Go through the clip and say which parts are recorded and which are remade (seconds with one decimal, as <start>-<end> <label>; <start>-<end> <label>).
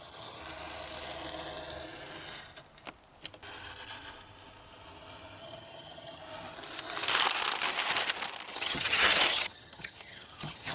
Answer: 0.0-0.4 remade; 0.4-5.4 recorded; 5.4-6.2 remade; 6.2-8.5 recorded; 8.5-10.7 remade